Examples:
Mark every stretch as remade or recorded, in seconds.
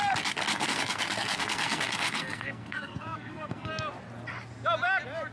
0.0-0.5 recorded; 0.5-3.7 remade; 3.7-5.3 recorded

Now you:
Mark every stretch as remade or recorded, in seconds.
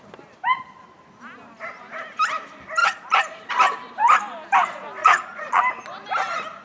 0.0-2.8 recorded; 2.8-3.5 remade; 3.5-5.0 recorded; 5.0-5.6 remade; 5.6-6.6 recorded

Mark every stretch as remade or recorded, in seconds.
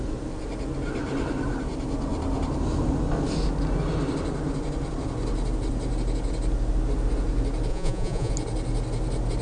0.0-7.7 recorded; 7.7-8.3 remade; 8.3-9.4 recorded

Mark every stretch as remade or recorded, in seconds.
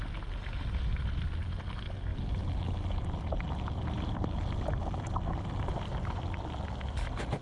0.0-2.1 remade; 2.1-5.7 recorded; 5.7-7.4 remade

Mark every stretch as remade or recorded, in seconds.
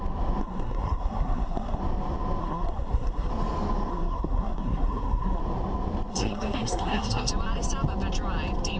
0.0-0.4 recorded; 0.4-1.8 remade; 1.8-2.4 recorded; 2.4-3.3 remade; 3.3-3.9 recorded; 3.9-5.4 remade; 5.4-6.1 recorded; 6.1-7.3 remade; 7.3-8.8 recorded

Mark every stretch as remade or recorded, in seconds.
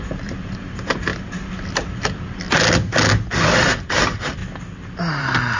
0.0-1.1 remade; 1.1-3.6 recorded; 3.6-4.4 remade; 4.4-5.0 recorded; 5.0-5.6 remade